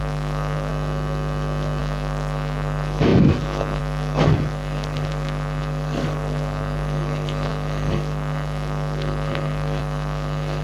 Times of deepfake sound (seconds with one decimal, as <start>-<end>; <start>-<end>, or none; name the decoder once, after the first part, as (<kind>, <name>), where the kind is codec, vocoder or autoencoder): 0.0-0.7 (codec, SNAC); 1.8-10.6